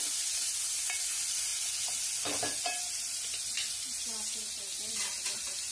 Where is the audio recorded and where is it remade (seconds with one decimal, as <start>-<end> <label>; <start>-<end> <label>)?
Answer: 0.0-5.7 recorded